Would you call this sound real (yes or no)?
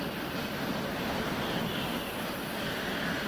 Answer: yes